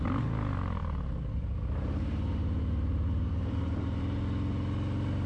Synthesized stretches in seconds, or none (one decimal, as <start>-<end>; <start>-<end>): 0.8-4.0